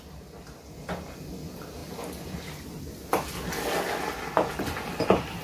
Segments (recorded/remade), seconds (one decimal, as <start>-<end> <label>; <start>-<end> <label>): 0.0-5.4 recorded